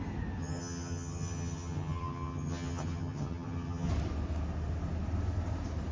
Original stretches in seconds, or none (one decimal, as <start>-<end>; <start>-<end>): 0.0-0.4; 3.9-5.9